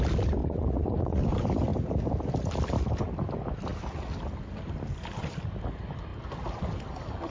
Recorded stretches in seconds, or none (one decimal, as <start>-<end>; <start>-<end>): 0.0-0.4; 1.2-7.3